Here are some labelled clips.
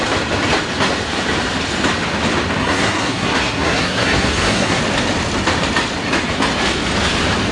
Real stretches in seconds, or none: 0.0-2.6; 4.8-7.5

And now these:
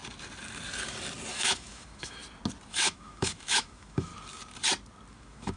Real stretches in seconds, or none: 0.0-1.3; 2.2-2.7; 4.1-5.1

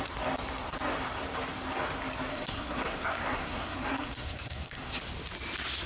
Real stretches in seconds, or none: 0.0-2.3; 5.0-5.9

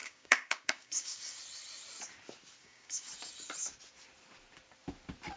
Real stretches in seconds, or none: 1.4-2.6; 3.1-5.4

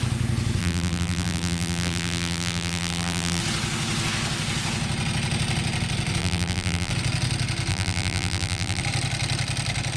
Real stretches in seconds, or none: 0.0-0.6; 3.4-6.2; 6.9-7.7; 8.8-10.0

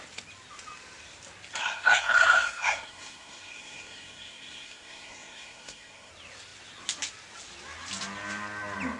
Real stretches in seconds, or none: 0.0-1.6; 6.1-9.0

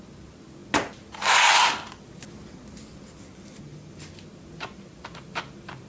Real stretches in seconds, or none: 0.0-5.9